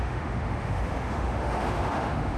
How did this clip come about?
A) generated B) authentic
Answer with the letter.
A